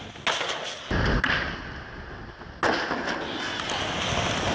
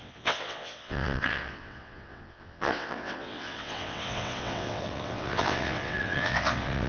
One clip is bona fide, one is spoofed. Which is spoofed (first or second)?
second